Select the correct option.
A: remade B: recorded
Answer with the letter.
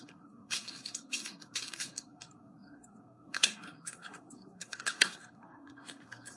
A